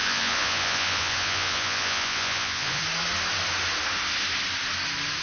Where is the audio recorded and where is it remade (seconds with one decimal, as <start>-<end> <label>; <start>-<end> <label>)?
0.0-2.8 remade; 2.8-5.2 recorded